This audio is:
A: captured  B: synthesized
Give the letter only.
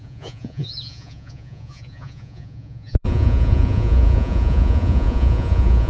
B